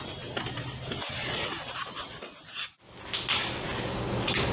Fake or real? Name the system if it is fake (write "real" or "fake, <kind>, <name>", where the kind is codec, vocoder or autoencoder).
real